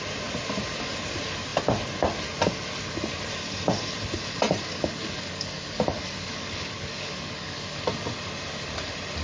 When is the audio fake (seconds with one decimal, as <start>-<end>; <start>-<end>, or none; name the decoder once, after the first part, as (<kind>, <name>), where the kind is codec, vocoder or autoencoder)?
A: 4.7-7.9 (codec, DAC)